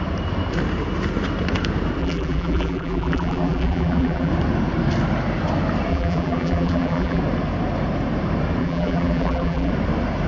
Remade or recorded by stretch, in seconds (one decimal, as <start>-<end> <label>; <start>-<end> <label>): 0.0-2.0 recorded; 2.0-4.3 remade; 4.3-5.9 recorded; 5.9-7.2 remade; 7.2-8.6 recorded; 8.6-9.7 remade; 9.7-10.3 recorded